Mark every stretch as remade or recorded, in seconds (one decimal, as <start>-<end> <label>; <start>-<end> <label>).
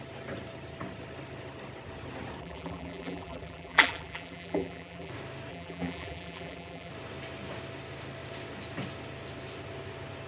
0.0-2.4 recorded; 2.4-5.1 remade; 5.1-5.5 recorded; 5.5-6.9 remade; 6.9-10.3 recorded